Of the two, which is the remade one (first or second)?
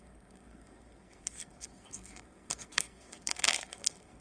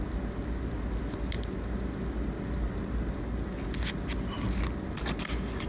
first